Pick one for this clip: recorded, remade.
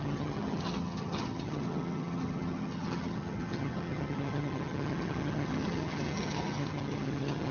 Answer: remade